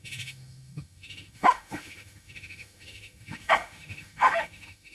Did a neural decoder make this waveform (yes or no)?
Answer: yes